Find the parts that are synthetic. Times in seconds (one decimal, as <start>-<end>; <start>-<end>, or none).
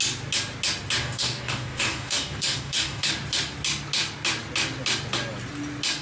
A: 1.0-3.1